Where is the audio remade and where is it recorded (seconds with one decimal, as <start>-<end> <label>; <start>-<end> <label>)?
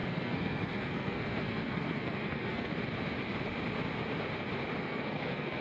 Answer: 0.0-2.7 remade; 2.7-4.8 recorded; 4.8-5.6 remade